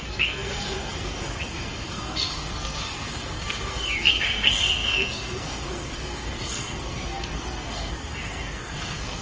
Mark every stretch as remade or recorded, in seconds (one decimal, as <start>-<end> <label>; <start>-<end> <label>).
0.0-9.2 remade